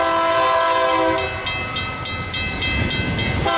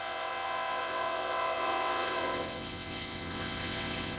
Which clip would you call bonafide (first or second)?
first